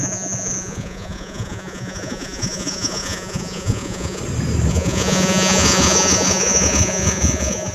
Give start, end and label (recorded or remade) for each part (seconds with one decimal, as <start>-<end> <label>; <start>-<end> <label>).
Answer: 0.0-4.2 remade; 4.2-4.7 recorded; 4.7-7.7 remade